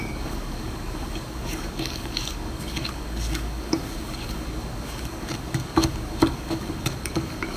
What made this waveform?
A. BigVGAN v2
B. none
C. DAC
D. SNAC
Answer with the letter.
C